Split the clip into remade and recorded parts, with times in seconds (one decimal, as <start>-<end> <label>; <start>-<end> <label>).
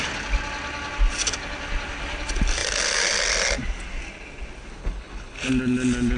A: 0.0-4.8 recorded; 4.8-5.5 remade; 5.5-6.2 recorded